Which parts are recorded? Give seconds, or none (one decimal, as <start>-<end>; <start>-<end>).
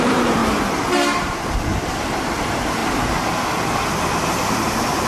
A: 0.4-1.3; 2.8-4.0